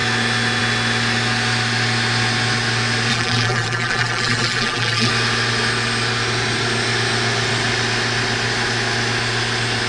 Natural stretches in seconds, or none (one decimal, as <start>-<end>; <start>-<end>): 0.0-3.1; 5.1-9.9